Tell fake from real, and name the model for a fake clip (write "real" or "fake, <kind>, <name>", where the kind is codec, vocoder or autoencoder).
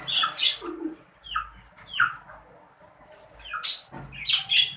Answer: real